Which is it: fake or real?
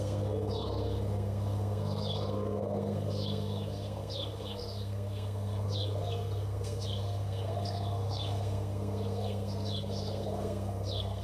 fake